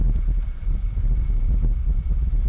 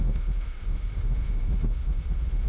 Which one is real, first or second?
first